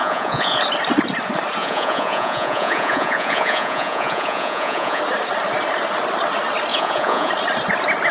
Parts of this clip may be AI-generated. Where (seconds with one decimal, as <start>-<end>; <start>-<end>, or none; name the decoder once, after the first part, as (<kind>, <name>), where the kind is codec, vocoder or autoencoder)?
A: 0.0-0.6 (vocoder, Vocos); 1.6-5.0; 6.7-7.3